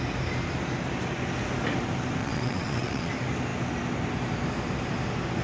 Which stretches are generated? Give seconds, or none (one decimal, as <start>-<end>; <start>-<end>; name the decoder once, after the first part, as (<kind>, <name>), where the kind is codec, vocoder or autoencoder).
2.2-3.1 (vocoder, WaveNeXt)

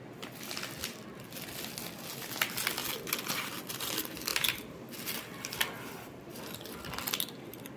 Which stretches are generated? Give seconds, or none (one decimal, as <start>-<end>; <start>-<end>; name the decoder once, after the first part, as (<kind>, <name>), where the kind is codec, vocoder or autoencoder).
none

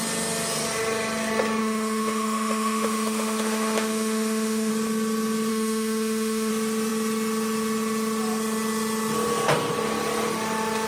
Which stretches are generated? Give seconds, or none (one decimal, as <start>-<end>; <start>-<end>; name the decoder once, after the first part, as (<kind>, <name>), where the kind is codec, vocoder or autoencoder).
1.6-4.7 (autoencoder, DAC-VAE); 5.5-6.5

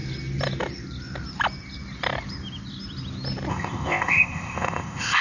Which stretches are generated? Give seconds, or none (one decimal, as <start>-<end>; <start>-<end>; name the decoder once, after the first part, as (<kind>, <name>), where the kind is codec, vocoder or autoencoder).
3.5-5.2 (codec, ZipCodec)

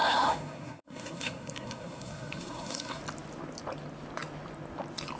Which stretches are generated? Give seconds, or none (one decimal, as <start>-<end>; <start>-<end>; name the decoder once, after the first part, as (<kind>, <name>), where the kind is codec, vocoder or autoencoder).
0.0-3.0 (codec, SNAC)

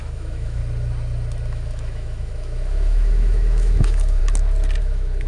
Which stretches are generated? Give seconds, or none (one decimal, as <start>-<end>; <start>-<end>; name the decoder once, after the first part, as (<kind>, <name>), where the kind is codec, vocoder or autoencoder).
0.0-0.6 (autoencoder, DAC-VAE); 1.5-4.2; 4.8-5.3

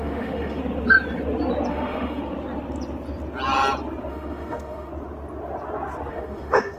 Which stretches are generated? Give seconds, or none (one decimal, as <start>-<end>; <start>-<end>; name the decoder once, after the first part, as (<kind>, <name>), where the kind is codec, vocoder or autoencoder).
0.0-0.6 (autoencoder, DAC-VAE); 1.7-2.2; 4.1-4.9; 6.1-6.8